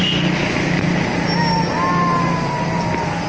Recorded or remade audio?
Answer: recorded